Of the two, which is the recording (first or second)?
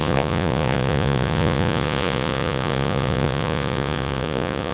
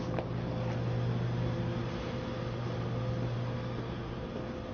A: second